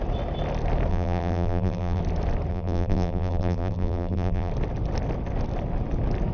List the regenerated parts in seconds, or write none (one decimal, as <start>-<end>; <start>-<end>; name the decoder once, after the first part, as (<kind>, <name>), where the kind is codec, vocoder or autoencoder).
0.9-2.0 (vocoder, BigVGAN v2); 2.5-4.5